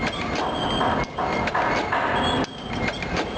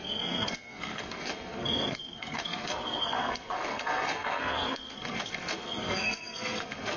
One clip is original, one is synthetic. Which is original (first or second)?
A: first